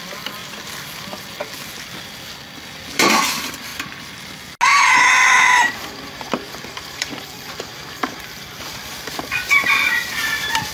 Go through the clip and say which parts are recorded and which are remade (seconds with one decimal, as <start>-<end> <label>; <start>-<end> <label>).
0.0-0.4 remade; 0.4-2.9 recorded; 2.9-3.7 remade; 3.7-5.7 recorded; 5.7-7.7 remade; 7.7-10.7 recorded